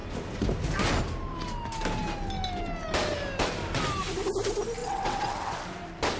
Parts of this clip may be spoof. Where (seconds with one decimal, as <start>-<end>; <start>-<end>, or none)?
4.8-5.5

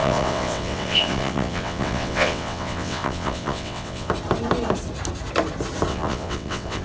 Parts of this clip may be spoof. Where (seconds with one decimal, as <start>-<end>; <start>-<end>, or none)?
0.0-4.1; 5.9-6.8

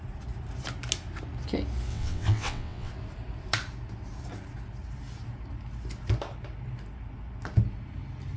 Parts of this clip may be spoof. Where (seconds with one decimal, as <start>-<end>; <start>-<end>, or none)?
1.9-2.9

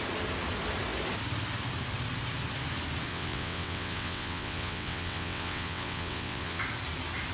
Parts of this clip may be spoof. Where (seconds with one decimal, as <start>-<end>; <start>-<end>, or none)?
3.1-6.6

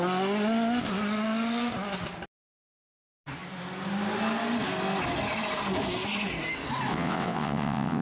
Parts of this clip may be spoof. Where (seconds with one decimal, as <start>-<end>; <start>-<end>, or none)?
6.9-8.0